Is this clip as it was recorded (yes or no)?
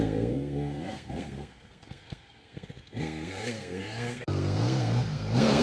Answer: no